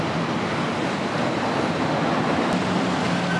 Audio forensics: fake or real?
real